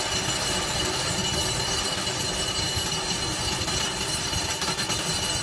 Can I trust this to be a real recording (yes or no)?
yes